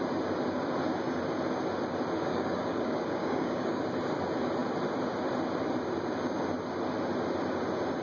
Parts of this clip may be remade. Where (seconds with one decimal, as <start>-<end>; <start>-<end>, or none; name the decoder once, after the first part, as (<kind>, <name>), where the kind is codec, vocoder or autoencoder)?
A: 2.3-3.8 (codec, DAC)